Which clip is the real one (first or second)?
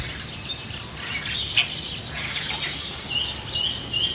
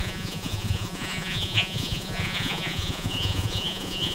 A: first